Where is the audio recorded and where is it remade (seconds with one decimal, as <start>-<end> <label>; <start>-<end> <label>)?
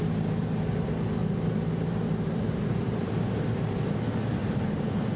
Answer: 0.0-1.2 recorded; 1.2-3.9 remade; 3.9-4.4 recorded; 4.4-5.2 remade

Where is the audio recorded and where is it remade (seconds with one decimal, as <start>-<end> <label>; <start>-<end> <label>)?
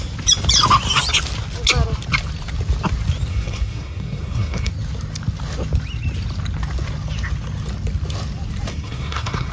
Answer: 0.0-3.3 recorded; 3.3-4.7 remade; 4.7-8.7 recorded; 8.7-9.5 remade